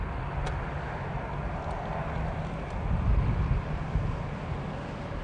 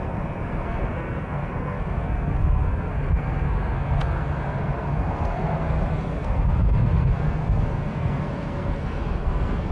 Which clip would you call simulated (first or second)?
second